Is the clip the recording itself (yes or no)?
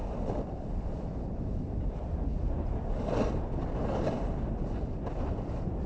yes